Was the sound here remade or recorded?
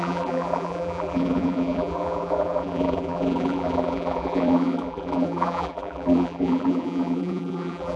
remade